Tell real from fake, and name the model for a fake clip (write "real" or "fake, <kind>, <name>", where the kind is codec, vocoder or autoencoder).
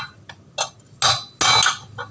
real